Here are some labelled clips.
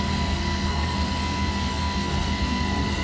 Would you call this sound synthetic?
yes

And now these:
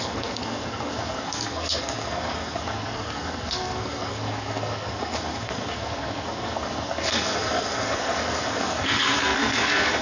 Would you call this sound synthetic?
yes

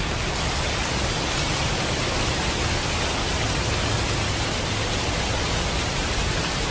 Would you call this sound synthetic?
no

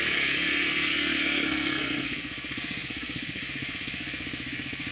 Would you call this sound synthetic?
yes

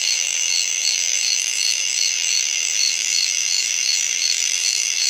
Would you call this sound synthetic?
yes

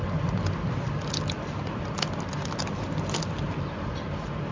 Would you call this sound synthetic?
no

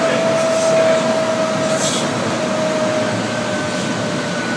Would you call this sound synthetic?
no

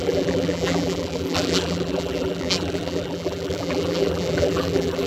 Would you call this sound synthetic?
yes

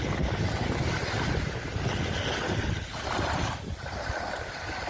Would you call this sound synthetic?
no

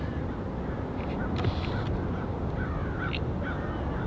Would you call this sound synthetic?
no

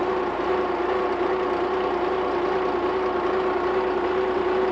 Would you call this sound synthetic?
no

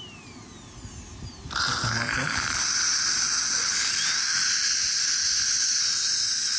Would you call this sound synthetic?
no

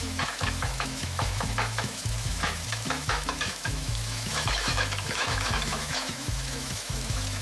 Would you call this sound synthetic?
yes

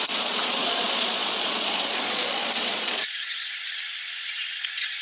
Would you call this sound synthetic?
yes